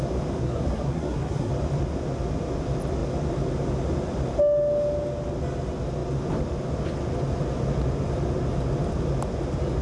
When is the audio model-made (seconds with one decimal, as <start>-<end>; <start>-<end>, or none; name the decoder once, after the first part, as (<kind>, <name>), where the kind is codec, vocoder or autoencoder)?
0.4-1.5 (codec, SNAC)